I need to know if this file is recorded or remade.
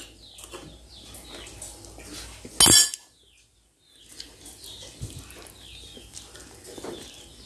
recorded